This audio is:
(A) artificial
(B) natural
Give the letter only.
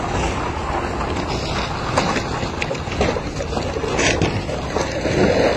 B